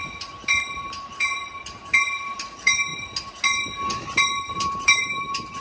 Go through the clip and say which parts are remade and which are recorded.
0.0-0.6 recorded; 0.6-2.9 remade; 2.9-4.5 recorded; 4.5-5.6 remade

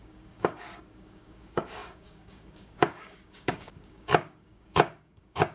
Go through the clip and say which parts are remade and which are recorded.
0.0-5.5 remade

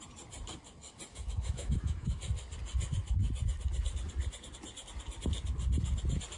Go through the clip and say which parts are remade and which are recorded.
0.0-1.1 recorded; 1.1-2.2 remade; 2.2-6.4 recorded

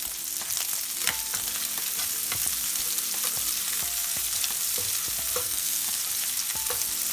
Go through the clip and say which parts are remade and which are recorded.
0.0-5.4 recorded; 5.4-6.0 remade; 6.0-7.1 recorded

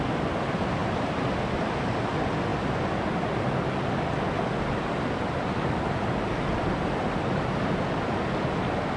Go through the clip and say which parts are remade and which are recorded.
0.0-9.0 recorded

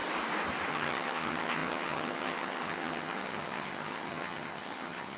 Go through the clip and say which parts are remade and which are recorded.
0.0-0.7 recorded; 0.7-5.2 remade